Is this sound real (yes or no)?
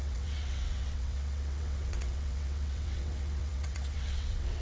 no